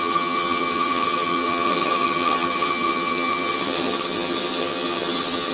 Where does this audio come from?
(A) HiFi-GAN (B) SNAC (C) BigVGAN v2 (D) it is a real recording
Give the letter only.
A